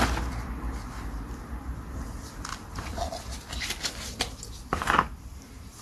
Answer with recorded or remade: recorded